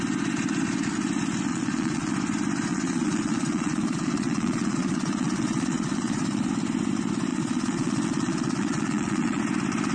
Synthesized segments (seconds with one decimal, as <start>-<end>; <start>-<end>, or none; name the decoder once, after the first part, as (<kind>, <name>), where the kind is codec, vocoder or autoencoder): 1.5-2.1 (vocoder, Vocos); 2.7-6.5; 7.3-9.4